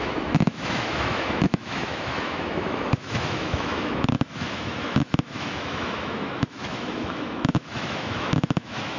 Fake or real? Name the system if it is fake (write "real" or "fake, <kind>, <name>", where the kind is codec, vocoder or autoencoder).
fake, autoencoder, DAC-VAE